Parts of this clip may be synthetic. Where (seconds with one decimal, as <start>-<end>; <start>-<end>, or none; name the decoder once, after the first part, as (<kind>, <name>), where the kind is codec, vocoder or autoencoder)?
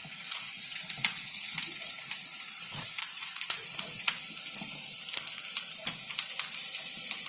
0.0-4.4 (vocoder, Vocos)